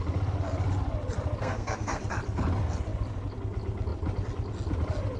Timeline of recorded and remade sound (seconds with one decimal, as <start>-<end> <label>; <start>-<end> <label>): 0.0-1.4 recorded; 1.4-2.0 remade; 2.0-5.2 recorded